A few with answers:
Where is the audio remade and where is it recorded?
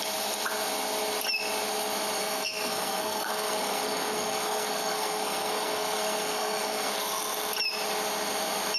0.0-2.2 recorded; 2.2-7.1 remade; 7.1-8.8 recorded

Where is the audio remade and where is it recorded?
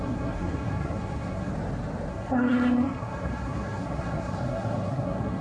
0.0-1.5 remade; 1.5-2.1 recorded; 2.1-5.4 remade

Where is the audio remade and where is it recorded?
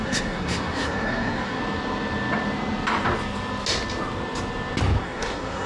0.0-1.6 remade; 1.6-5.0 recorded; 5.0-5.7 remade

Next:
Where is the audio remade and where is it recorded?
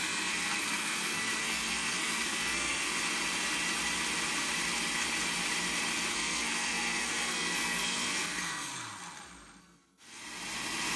0.0-2.9 remade; 2.9-6.1 recorded; 6.1-8.7 remade; 8.7-9.6 recorded; 9.6-10.2 remade; 10.2-11.0 recorded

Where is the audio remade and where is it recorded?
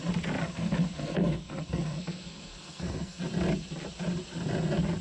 0.0-0.4 recorded; 0.4-3.2 remade; 3.2-5.0 recorded